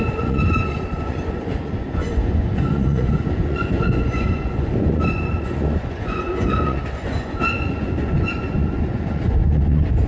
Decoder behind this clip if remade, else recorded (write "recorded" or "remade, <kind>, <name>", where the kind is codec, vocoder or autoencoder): remade, vocoder, Vocos